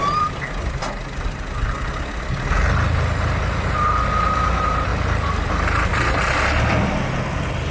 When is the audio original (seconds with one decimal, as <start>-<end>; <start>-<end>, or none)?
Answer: 0.8-4.9; 6.5-7.7